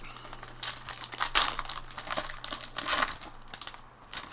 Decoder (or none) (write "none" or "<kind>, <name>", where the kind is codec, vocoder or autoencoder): none